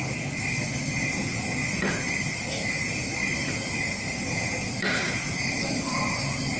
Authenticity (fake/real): real